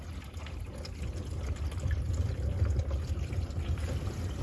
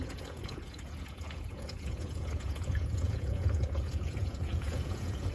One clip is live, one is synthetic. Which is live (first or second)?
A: first